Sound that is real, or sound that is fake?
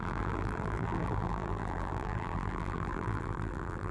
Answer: fake